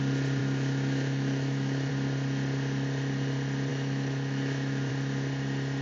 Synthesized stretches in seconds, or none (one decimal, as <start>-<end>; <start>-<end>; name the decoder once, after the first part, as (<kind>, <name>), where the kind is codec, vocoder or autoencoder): 0.4-1.9 (autoencoder, DAC-VAE); 3.7-4.9